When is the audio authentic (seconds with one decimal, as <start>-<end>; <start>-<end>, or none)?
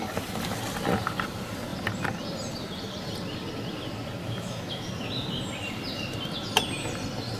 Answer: 0.0-4.2; 4.9-7.4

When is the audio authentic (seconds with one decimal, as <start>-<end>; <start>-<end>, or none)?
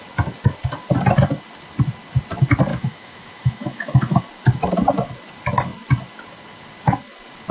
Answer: 0.0-2.7; 4.2-7.5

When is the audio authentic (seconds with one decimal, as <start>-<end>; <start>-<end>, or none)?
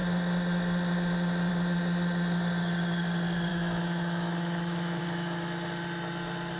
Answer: 0.0-3.5; 5.0-6.6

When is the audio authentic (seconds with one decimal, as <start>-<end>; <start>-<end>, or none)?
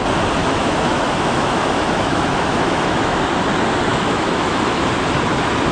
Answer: 0.0-0.4; 3.2-3.9; 4.9-5.7